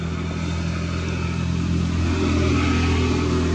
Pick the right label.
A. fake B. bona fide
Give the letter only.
B